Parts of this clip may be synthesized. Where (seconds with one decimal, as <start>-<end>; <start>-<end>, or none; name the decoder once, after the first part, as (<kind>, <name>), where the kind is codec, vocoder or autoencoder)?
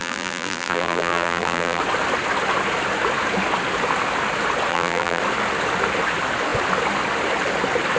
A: 0.0-1.8 (vocoder, BigVGAN v2); 4.7-5.2